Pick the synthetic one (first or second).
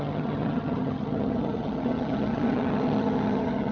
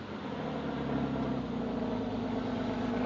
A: first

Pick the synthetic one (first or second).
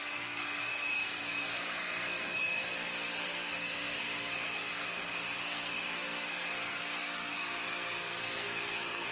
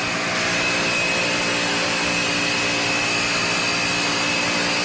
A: first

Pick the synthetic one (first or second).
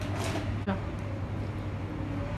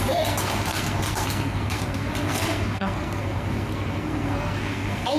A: second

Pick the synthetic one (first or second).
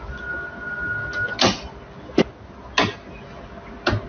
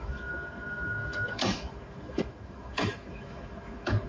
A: second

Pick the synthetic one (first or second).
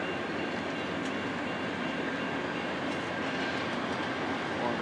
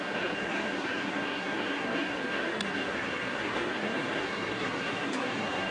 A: second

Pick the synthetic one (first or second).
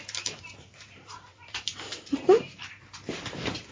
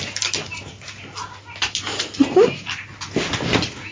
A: first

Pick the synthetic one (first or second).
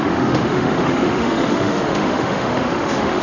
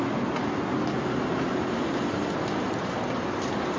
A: first